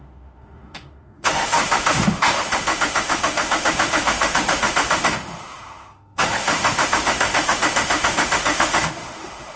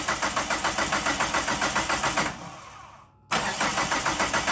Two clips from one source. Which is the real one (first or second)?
second